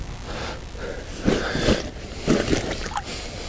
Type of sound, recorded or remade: recorded